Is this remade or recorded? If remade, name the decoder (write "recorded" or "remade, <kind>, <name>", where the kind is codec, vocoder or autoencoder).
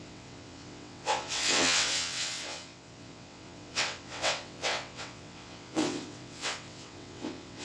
remade, vocoder, WaveNeXt